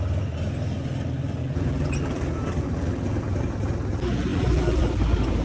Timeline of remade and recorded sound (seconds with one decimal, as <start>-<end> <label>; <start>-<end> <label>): 0.0-1.4 recorded; 1.4-3.4 remade; 3.4-4.3 recorded; 4.3-4.9 remade; 4.9-5.4 recorded